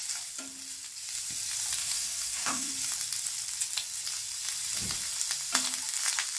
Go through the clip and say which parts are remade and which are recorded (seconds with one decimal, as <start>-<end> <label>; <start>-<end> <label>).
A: 0.0-1.8 recorded; 1.8-2.7 remade; 2.7-6.4 recorded